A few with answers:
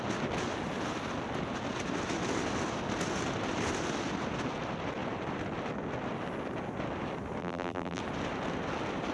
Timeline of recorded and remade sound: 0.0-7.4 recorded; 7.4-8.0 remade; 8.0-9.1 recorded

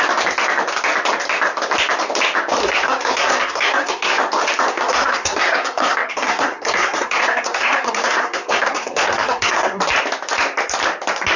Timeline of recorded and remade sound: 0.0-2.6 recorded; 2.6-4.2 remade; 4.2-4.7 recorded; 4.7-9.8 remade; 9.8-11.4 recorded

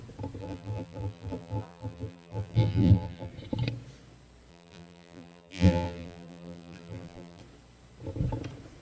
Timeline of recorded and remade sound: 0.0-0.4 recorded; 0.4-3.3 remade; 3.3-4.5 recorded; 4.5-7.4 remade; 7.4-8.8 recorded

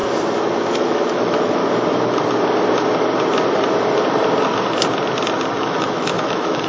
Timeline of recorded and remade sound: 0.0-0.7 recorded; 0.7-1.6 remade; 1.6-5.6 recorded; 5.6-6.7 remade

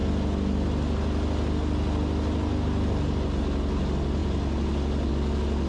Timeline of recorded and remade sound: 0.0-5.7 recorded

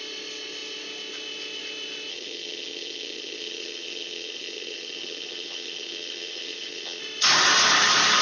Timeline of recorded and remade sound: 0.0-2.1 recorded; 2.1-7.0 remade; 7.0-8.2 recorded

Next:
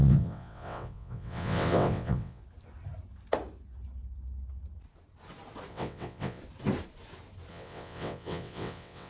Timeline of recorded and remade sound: 0.0-2.4 remade; 2.4-5.7 recorded; 5.7-6.4 remade; 6.4-7.5 recorded; 7.5-9.1 remade